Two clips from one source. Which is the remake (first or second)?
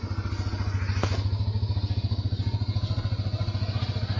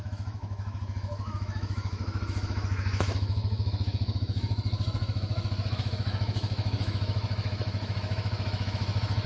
second